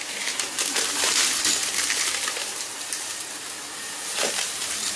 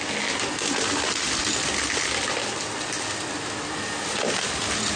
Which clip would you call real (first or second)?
second